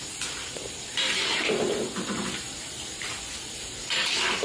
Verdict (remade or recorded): remade